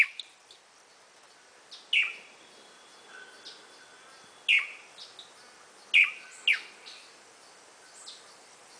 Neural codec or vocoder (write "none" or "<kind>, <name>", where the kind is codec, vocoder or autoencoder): none